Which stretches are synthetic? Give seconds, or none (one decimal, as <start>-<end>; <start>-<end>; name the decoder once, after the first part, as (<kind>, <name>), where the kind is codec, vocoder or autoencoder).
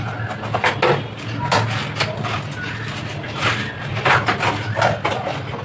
none